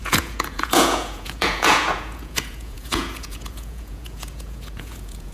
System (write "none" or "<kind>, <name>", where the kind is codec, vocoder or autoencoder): vocoder, Vocos